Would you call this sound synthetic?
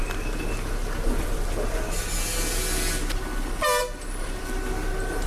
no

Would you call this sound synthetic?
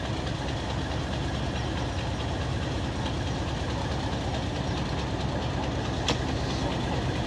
no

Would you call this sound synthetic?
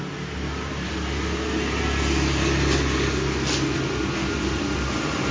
no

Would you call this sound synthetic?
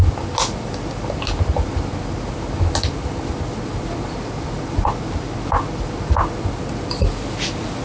no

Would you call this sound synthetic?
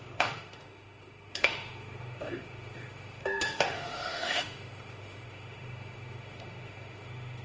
yes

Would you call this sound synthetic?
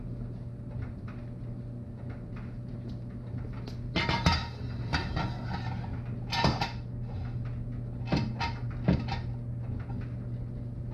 no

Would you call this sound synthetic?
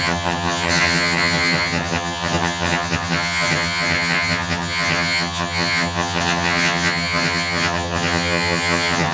yes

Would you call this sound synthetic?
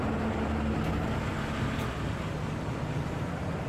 no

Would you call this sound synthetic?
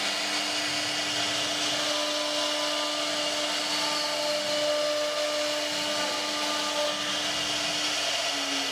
no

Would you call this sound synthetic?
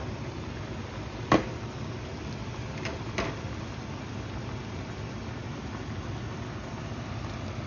no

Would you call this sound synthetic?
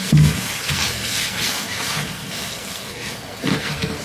yes